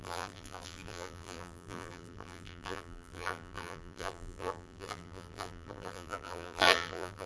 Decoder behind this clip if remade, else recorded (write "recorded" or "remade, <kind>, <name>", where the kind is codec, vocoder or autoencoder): remade, vocoder, BigVGAN v2